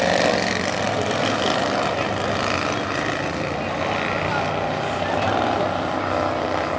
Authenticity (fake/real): real